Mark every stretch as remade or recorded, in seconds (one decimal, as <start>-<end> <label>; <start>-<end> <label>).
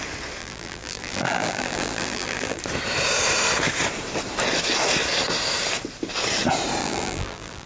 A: 0.0-0.4 recorded; 0.4-2.6 remade; 2.6-6.8 recorded; 6.8-7.7 remade